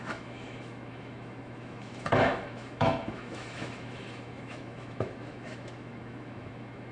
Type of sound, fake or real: fake